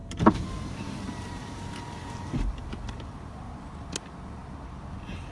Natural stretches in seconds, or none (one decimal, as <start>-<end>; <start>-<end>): 2.9-5.3